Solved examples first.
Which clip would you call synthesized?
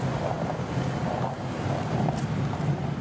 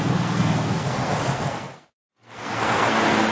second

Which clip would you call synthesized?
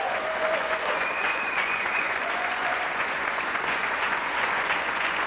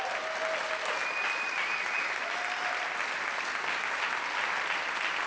first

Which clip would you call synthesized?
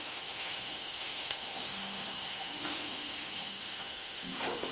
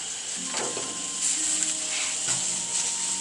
first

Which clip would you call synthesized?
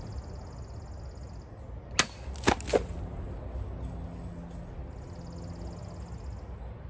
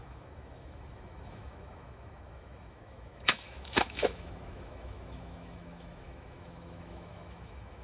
second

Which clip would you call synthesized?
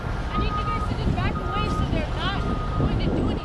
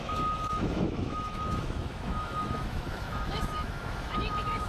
second